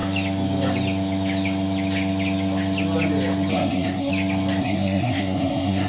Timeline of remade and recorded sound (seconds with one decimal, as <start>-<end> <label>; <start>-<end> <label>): 0.0-3.5 recorded; 3.5-4.1 remade; 4.1-4.6 recorded; 4.6-5.9 remade